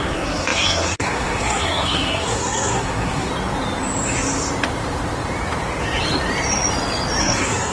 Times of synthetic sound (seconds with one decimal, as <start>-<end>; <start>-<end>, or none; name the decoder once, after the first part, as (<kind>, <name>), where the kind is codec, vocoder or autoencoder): 0.0-3.3 (codec, SNAC); 7.2-7.7